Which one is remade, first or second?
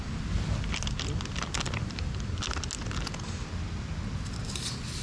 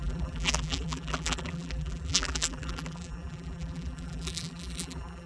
second